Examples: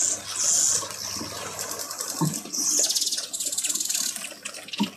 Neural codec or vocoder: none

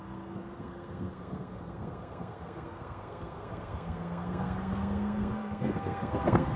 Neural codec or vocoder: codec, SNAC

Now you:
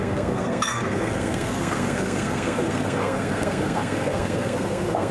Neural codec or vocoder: codec, SNAC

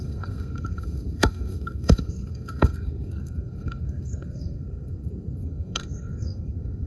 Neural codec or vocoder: codec, SNAC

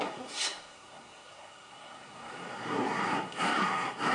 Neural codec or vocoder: codec, SNAC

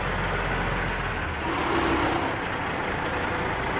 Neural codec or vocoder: none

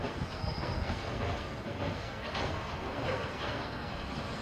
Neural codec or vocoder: codec, SNAC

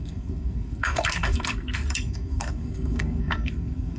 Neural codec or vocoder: codec, SNAC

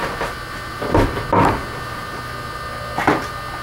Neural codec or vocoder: none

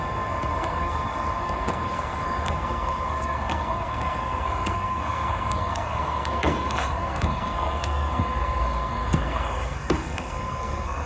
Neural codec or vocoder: codec, SNAC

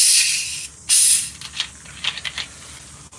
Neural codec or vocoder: none